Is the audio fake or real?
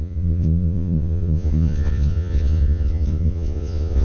fake